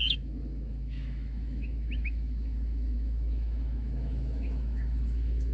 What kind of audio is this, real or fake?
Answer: fake